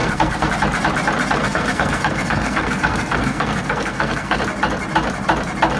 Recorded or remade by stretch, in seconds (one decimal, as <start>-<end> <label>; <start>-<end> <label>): 0.0-0.5 remade; 0.5-1.4 recorded; 1.4-4.4 remade; 4.4-5.8 recorded